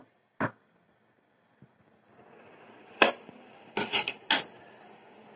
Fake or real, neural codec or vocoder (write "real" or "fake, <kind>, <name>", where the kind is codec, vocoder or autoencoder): real